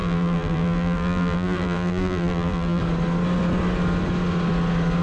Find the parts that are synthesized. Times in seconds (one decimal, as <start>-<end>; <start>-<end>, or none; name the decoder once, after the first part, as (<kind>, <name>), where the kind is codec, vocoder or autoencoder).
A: 0.0-2.8 (vocoder, BigVGAN v2)